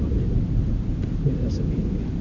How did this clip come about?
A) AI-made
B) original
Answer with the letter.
B